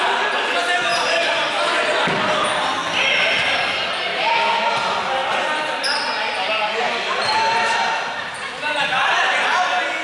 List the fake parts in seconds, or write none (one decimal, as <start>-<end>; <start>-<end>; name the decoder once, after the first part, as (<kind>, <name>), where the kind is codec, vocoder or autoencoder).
0.9-1.6 (vocoder, BigVGAN v2); 4.1-4.7